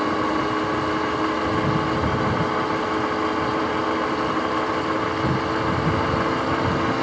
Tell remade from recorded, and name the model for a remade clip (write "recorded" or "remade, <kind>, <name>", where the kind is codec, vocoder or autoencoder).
recorded